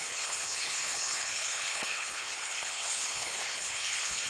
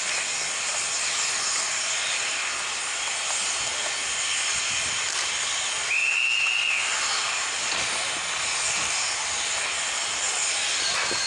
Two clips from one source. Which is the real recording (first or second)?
second